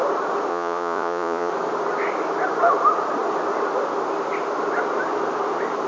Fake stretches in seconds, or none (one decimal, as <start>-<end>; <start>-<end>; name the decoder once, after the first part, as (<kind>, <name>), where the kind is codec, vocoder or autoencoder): 0.5-1.5 (vocoder, Vocos)